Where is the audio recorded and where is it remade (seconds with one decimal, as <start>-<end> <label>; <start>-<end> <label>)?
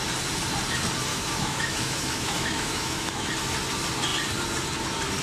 0.0-1.1 recorded; 1.1-3.3 remade; 3.3-5.2 recorded